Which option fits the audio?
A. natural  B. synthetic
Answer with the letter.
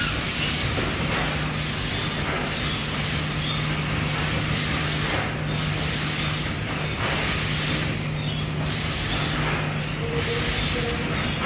A